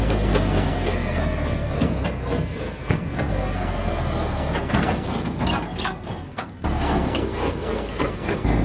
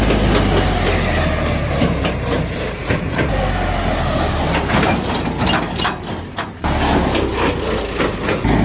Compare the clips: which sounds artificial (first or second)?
first